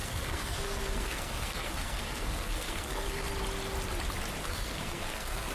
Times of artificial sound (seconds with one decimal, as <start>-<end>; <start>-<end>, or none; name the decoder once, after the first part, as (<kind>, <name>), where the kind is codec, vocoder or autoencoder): 0.0-3.3 (codec, SNAC); 4.4-5.5